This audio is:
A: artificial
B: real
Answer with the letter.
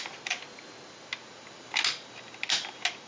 B